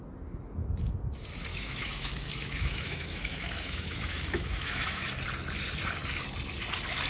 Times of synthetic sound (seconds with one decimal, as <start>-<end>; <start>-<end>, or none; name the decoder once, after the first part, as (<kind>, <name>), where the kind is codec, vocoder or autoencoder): 1.5-5.1 (autoencoder, DAC-VAE)